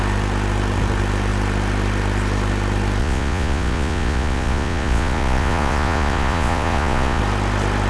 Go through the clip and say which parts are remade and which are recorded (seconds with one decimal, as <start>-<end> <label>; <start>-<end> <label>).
0.0-3.0 recorded; 3.0-7.2 remade; 7.2-7.9 recorded